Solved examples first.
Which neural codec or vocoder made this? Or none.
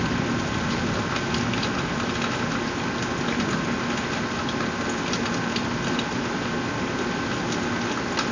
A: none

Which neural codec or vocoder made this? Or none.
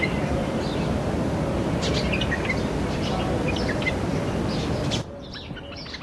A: none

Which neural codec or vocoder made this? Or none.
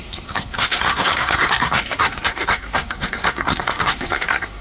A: codec, SNAC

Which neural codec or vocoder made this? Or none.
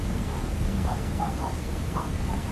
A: codec, SNAC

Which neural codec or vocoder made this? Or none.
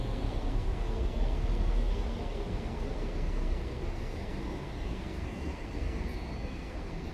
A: codec, SNAC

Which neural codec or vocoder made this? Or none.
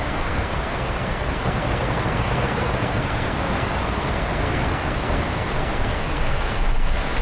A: codec, SNAC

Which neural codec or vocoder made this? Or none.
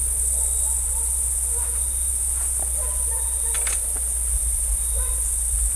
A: none